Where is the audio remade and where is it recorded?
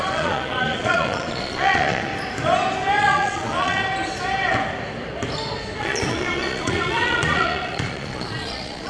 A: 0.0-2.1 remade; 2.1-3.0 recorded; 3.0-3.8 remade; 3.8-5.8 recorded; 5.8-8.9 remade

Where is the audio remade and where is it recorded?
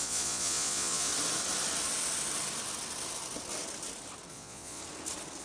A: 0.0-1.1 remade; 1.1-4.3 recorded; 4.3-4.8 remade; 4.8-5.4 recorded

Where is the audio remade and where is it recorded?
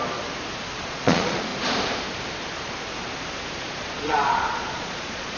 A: 0.0-0.8 recorded; 0.8-1.5 remade; 1.5-3.9 recorded; 3.9-5.4 remade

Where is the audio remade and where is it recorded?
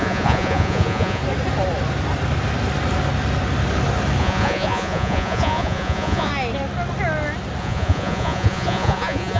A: 0.0-1.2 remade; 1.2-4.2 recorded; 4.2-6.3 remade; 6.3-7.6 recorded; 7.6-9.4 remade